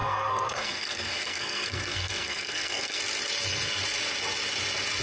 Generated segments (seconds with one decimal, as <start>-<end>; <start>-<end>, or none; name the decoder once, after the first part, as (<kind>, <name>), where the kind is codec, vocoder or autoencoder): 0.0-3.0 (codec, SNAC)